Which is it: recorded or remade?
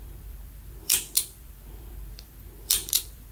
remade